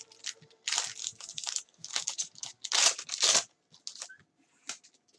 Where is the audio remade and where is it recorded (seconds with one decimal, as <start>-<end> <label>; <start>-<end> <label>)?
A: 0.0-1.0 recorded; 1.0-2.5 remade; 2.5-5.2 recorded